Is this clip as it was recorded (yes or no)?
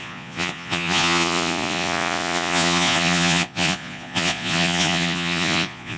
no